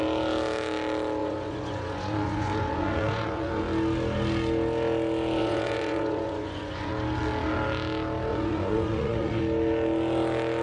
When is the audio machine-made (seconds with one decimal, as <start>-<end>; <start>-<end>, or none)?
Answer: 1.2-3.6; 5.4-6.9; 8.3-9.4